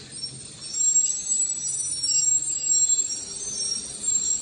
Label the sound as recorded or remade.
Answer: recorded